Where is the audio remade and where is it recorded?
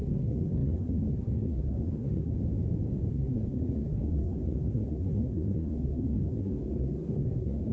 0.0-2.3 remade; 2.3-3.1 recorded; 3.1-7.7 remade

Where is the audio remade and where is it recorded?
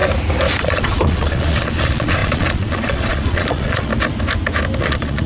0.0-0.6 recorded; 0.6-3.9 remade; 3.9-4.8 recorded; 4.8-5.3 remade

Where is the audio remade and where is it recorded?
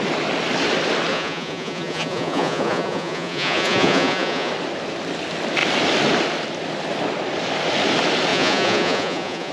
0.0-1.1 recorded; 1.1-4.5 remade; 4.5-8.3 recorded; 8.3-9.5 remade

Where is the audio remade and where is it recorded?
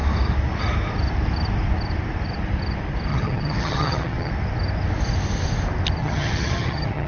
0.0-3.1 recorded; 3.1-4.3 remade; 4.3-6.0 recorded; 6.0-7.1 remade